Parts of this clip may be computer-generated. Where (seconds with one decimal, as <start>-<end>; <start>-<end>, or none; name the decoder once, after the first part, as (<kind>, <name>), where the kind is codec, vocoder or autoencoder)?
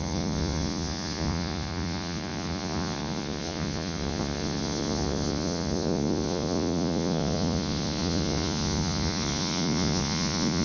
0.0-10.6 (vocoder, Vocos)